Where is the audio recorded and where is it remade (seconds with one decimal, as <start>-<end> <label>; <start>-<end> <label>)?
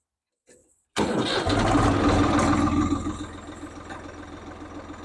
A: 0.0-0.6 recorded; 0.6-1.1 remade; 1.1-5.0 recorded